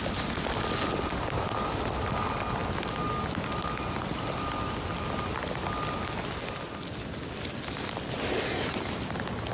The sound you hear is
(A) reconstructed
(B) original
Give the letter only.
B